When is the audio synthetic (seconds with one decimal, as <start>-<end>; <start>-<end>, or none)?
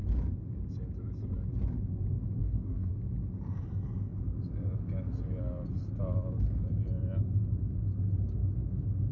2.4-2.9